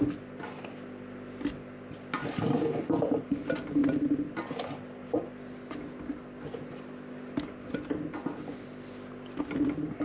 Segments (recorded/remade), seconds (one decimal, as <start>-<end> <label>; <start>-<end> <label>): 0.0-10.0 recorded